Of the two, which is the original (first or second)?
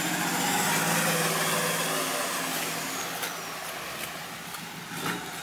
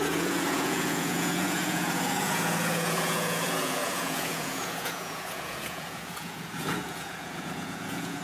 first